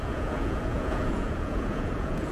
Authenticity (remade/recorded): remade